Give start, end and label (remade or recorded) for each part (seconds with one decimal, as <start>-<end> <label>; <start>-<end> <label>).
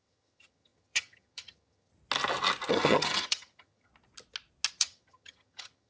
0.0-1.9 remade; 1.9-2.7 recorded; 2.7-3.9 remade; 3.9-4.7 recorded; 4.7-5.9 remade